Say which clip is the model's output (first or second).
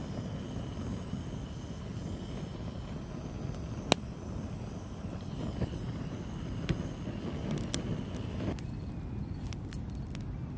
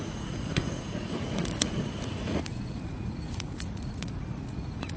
second